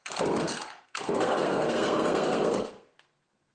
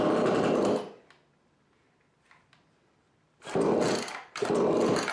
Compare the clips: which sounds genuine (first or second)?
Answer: second